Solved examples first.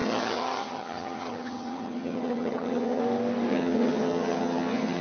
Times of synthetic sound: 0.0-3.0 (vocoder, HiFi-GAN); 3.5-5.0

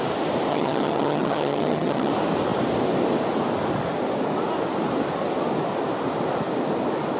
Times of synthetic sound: 0.5-2.1 (vocoder, HiFi-GAN)